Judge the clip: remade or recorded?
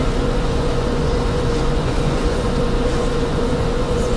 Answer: remade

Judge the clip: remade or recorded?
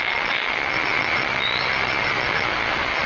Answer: remade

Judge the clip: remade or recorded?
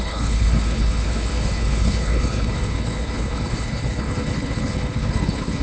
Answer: remade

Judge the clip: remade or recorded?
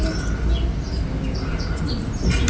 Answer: recorded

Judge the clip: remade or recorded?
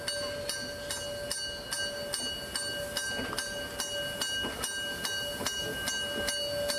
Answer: recorded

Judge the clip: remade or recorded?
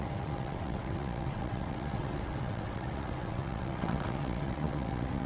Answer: remade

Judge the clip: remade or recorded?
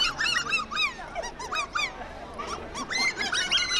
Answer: recorded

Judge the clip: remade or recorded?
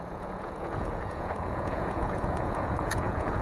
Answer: remade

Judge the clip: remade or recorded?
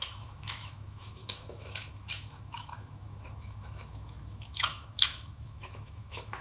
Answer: remade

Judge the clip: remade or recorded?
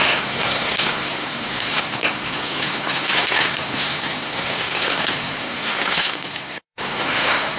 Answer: remade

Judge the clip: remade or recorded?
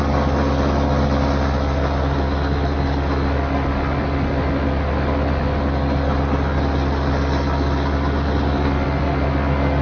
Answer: recorded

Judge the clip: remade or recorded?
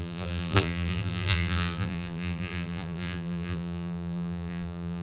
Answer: remade